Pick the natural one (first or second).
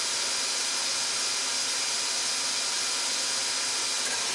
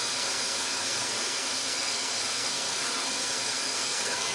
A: first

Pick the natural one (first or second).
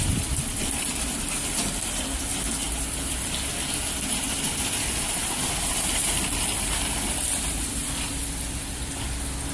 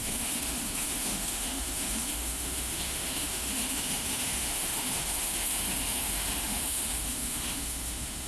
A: first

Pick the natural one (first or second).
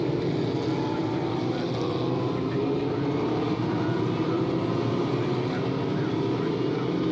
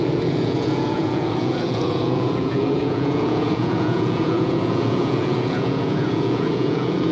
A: first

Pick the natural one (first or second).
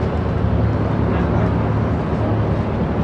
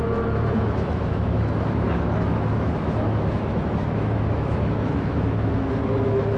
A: first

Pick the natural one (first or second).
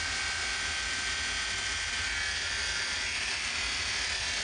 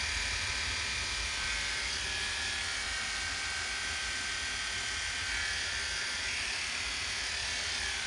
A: first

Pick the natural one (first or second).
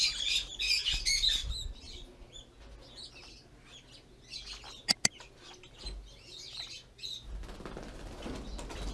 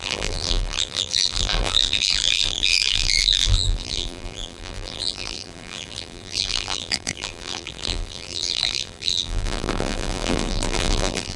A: first